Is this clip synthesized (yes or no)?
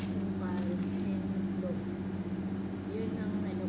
no